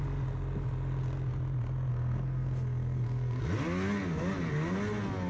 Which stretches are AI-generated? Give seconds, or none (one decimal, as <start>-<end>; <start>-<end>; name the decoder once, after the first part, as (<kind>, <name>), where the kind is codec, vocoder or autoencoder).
1.9-3.4 (codec, SNAC)